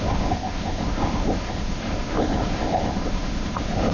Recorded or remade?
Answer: remade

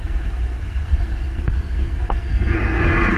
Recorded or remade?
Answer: remade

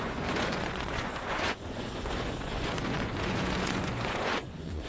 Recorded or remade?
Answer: remade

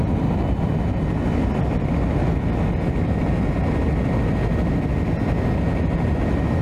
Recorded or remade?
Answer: recorded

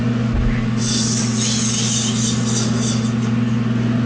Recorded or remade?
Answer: recorded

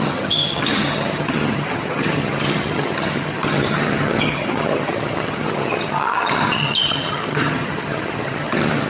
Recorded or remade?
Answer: remade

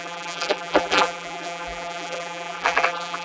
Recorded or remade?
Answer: remade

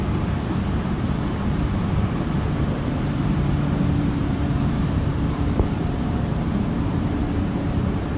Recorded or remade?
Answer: remade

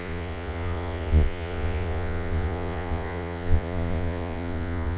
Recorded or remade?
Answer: remade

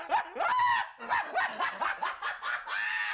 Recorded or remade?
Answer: recorded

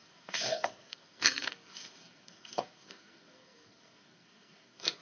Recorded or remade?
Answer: remade